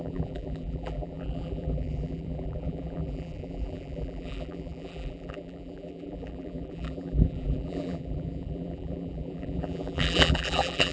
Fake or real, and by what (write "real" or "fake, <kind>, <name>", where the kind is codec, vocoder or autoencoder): fake, vocoder, BigVGAN v2